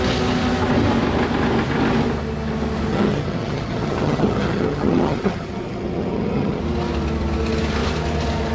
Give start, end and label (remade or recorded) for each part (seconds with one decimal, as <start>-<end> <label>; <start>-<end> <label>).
0.0-2.9 recorded; 2.9-6.6 remade; 6.6-8.5 recorded